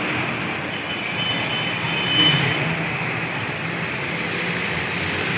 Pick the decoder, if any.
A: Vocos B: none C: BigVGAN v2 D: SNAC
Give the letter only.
C